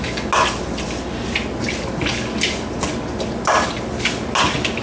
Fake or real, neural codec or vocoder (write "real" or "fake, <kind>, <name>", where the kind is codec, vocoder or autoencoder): real